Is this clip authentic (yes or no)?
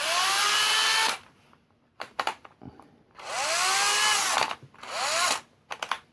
yes